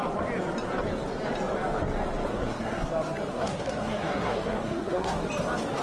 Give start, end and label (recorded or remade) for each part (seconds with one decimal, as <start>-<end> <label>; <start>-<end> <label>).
0.0-2.3 recorded; 2.3-2.9 remade; 2.9-3.3 recorded; 3.3-5.2 remade; 5.2-5.8 recorded

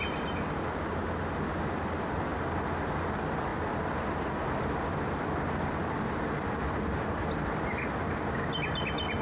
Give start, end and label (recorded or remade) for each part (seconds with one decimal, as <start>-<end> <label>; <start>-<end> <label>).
0.0-3.5 recorded; 3.5-7.9 remade; 7.9-9.2 recorded

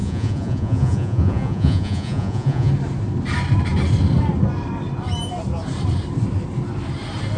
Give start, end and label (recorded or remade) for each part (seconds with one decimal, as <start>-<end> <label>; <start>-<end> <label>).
0.0-2.7 remade; 2.7-7.4 recorded

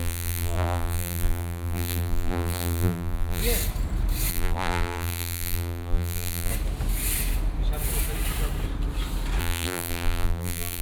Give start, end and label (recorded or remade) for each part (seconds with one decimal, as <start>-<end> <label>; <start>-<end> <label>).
0.0-3.4 remade; 3.4-4.3 recorded; 4.3-6.5 remade; 6.5-9.4 recorded; 9.4-10.8 remade

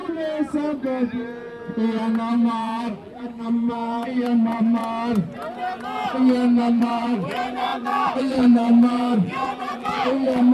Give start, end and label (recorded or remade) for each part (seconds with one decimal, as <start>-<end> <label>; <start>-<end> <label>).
0.0-2.3 recorded; 2.3-4.8 remade; 4.8-6.6 recorded; 6.6-10.5 remade

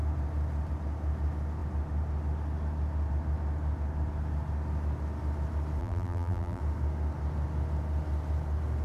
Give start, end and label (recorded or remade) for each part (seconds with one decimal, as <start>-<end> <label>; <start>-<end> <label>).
0.0-5.8 recorded; 5.8-6.6 remade; 6.6-8.8 recorded

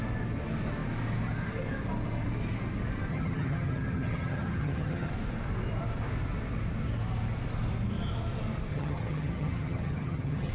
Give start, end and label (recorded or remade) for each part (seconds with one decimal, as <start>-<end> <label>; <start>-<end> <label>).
0.0-3.1 recorded; 3.1-5.1 remade; 5.1-8.7 recorded; 8.7-10.5 remade